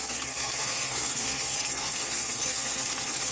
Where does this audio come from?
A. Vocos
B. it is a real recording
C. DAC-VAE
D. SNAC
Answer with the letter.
D